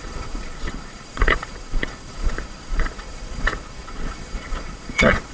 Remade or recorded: remade